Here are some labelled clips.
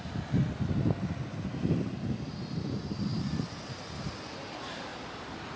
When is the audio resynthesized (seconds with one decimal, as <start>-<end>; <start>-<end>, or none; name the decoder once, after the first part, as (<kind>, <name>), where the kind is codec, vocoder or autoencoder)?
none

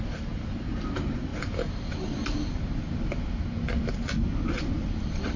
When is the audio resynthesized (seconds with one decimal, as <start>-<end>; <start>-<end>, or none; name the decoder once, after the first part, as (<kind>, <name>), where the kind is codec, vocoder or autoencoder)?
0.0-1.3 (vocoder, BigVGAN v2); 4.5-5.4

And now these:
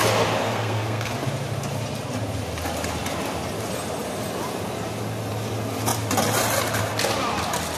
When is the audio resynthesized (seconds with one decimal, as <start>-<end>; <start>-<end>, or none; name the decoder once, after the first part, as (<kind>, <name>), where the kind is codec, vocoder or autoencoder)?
0.4-1.1 (codec, SNAC)

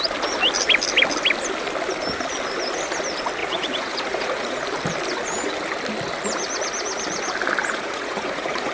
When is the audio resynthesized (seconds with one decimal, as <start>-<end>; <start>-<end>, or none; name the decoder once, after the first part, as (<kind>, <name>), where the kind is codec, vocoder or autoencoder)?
3.4-4.6 (vocoder, Vocos); 7.6-8.7